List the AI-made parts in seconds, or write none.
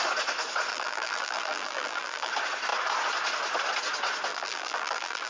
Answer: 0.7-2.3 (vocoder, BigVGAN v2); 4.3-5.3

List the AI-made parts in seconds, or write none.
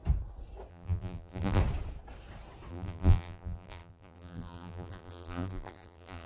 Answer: 0.7-1.6 (vocoder, BigVGAN v2); 2.7-6.3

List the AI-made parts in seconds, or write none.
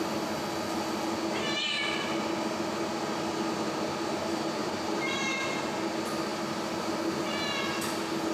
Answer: 4.6-5.6 (vocoder, BigVGAN v2); 6.3-6.9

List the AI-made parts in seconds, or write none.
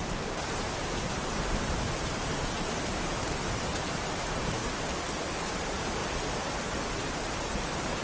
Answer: 0.0-4.6 (vocoder, BigVGAN v2); 5.3-6.0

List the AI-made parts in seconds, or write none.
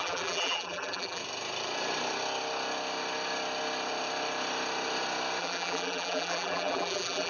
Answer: 0.0-1.2 (vocoder, BigVGAN v2); 5.4-7.3